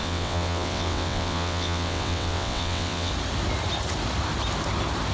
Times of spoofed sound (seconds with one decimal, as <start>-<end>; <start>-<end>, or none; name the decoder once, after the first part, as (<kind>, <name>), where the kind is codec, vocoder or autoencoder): 0.0-3.1 (vocoder, WaveNeXt)

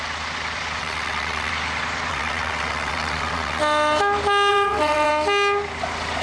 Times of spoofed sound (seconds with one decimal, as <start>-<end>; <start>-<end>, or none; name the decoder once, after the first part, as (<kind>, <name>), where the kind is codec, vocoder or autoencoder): 0.8-1.5 (vocoder, WaveNeXt); 2.1-3.6; 4.5-5.1